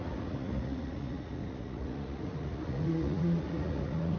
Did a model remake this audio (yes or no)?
yes